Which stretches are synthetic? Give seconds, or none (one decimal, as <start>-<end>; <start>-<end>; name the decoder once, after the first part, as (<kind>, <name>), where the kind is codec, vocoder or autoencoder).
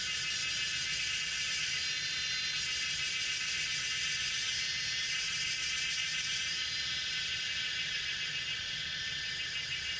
0.0-0.4 (vocoder, BigVGAN v2); 1.0-10.0